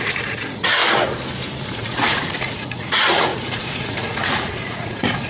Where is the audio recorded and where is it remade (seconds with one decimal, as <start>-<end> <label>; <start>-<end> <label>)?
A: 0.0-0.8 remade; 0.8-1.6 recorded; 1.6-5.3 remade

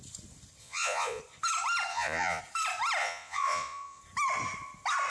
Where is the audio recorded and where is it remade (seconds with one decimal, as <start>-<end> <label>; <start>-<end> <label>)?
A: 0.0-0.6 recorded; 0.6-1.2 remade; 1.2-1.9 recorded; 1.9-2.4 remade; 2.4-3.0 recorded; 3.0-4.0 remade; 4.0-5.1 recorded